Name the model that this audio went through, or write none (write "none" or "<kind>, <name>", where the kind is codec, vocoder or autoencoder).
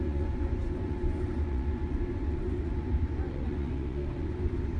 vocoder, Vocos